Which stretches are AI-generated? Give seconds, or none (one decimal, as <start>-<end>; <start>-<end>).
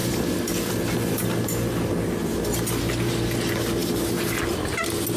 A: 0.0-3.1; 3.8-4.4